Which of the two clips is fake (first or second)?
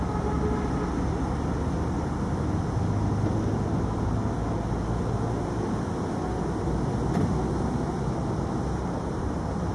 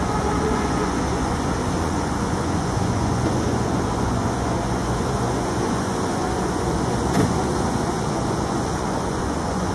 second